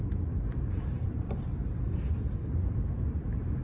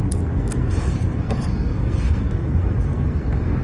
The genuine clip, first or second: first